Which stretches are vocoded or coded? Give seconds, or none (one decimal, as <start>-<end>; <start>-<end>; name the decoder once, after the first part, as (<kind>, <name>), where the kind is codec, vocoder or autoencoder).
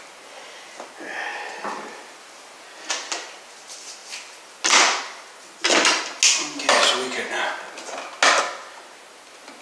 none